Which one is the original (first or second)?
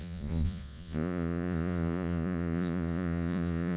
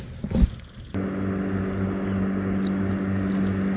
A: second